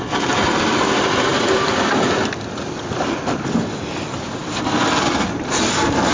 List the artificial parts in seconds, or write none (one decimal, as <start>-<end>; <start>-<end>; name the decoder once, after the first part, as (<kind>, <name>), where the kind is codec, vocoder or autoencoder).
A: 1.3-2.3 (vocoder, BigVGAN v2); 4.4-5.1